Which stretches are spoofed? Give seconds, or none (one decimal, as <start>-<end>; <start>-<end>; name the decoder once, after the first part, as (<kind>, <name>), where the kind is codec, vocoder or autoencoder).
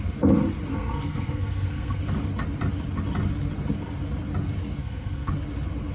0.7-2.0 (codec, SNAC); 4.8-5.3